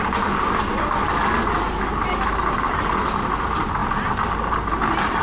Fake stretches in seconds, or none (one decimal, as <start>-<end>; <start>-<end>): 0.0-1.0; 2.1-3.8